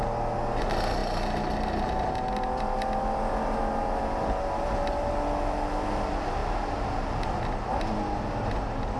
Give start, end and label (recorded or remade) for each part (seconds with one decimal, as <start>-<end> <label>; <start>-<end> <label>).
0.0-9.0 recorded